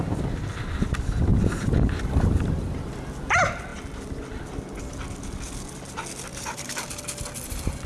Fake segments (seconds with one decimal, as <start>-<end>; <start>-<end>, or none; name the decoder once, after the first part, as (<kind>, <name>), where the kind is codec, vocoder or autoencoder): 1.3-2.0 (vocoder, BigVGAN v2); 6.3-7.0